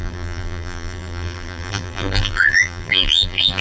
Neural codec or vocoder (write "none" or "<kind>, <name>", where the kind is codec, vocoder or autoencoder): vocoder, BigVGAN v2